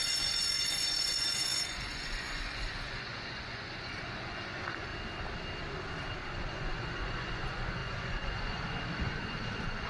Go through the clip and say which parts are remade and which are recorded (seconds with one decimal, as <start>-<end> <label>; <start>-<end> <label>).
0.0-4.9 remade; 4.9-6.3 recorded; 6.3-9.9 remade